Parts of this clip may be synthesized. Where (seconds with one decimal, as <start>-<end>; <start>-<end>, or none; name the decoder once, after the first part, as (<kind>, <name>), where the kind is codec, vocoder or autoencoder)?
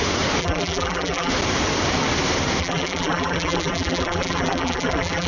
0.4-1.3 (vocoder, BigVGAN v2); 2.6-5.3